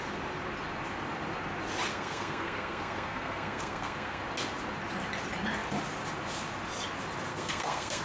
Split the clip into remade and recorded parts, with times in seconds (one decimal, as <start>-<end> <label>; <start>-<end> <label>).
0.0-1.9 recorded; 1.9-4.2 remade; 4.2-7.3 recorded; 7.3-8.0 remade